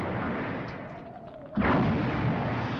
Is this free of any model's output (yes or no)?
yes